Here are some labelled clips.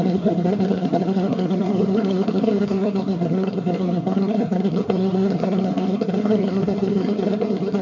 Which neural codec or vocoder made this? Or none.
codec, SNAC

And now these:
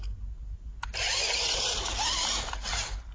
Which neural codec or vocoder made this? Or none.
none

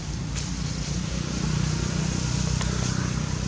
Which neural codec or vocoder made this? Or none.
vocoder, BigVGAN v2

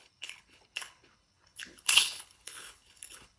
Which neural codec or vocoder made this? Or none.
codec, HILCodec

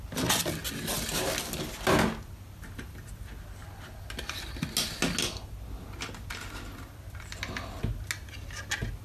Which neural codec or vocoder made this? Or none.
none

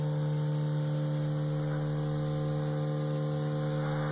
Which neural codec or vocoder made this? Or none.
none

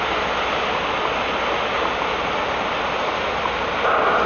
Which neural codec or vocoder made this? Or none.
none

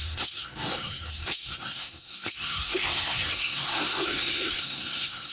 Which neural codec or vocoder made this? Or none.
codec, SNAC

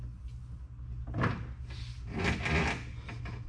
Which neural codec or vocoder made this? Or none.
none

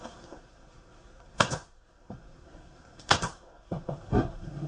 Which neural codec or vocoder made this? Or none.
codec, SNAC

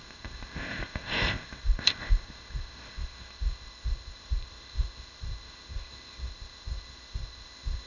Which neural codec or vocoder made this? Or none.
codec, ZipCodec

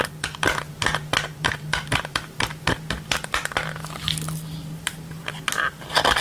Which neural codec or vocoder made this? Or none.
vocoder, BigVGAN v2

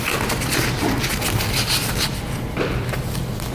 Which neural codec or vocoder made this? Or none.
none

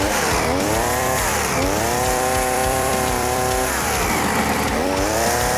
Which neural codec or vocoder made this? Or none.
vocoder, BigVGAN v2